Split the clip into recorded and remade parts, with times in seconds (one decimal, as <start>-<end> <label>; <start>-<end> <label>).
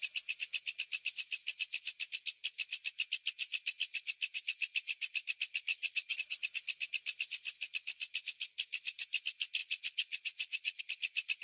0.0-5.7 recorded; 5.7-6.4 remade; 6.4-9.6 recorded; 9.6-10.8 remade; 10.8-11.4 recorded